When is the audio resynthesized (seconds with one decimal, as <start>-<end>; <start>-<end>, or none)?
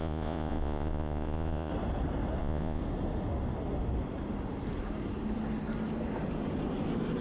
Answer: 0.0-1.7; 2.4-2.8